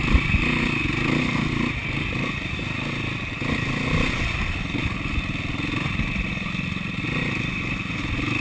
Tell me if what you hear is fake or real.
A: real